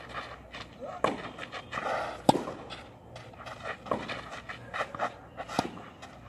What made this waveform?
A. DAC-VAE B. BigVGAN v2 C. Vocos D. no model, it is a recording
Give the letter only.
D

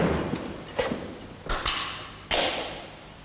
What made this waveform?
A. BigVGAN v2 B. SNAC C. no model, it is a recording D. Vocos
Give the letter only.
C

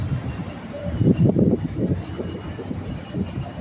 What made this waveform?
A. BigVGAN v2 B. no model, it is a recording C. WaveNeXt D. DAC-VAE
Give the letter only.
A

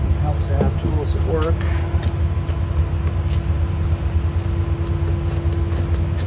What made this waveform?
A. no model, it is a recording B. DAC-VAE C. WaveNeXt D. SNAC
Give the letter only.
A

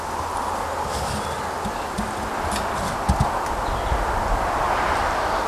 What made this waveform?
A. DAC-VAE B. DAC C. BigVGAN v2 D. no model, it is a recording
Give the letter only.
D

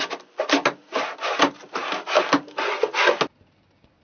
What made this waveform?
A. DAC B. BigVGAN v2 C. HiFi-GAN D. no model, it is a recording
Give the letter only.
D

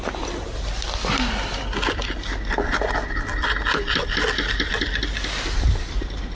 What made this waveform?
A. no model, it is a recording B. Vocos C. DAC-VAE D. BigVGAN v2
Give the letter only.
A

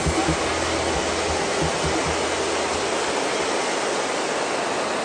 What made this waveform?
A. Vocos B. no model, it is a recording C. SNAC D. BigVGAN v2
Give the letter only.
B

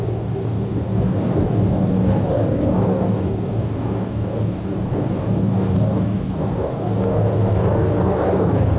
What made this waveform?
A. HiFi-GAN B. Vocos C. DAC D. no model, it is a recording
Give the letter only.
C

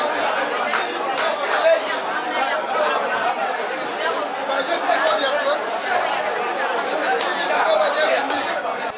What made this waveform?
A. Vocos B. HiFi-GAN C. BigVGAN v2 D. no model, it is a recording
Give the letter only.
D